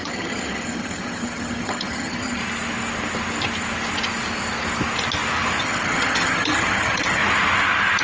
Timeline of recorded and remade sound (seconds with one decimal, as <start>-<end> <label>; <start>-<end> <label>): 0.0-2.4 remade; 2.4-5.6 recorded; 5.6-7.2 remade; 7.2-8.0 recorded